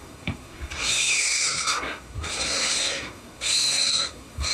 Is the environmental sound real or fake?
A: fake